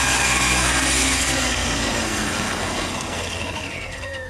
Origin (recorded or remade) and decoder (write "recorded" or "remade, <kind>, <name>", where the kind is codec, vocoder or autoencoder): remade, codec, SNAC